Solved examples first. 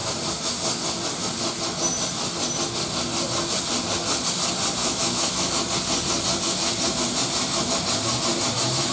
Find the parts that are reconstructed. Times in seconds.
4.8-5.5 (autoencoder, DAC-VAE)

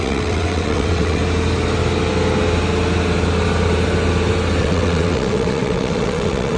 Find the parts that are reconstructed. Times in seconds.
0.0-1.2 (vocoder, WaveNeXt); 4.6-6.6

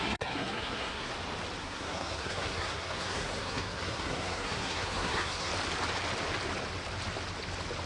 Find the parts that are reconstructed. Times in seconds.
0.0-1.1 (codec, SNAC); 1.6-5.5

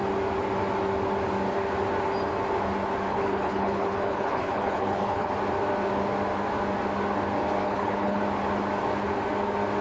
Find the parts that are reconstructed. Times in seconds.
3.1-5.3 (codec, HILCodec); 7.6-8.2